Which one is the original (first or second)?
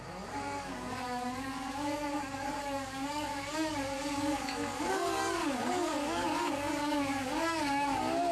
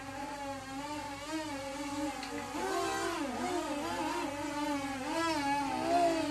second